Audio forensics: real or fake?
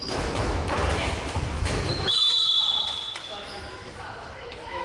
fake